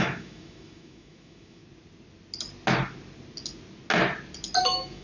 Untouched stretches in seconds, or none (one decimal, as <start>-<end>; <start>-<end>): 1.6-4.6